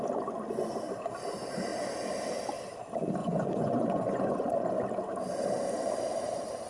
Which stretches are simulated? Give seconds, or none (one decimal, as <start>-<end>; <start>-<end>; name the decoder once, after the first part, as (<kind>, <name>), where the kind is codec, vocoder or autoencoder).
3.2-4.8 (vocoder, Vocos)